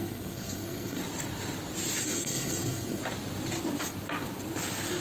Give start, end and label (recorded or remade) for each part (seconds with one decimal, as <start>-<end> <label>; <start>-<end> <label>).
0.0-1.0 remade; 1.0-2.0 recorded; 2.0-3.0 remade; 3.0-5.0 recorded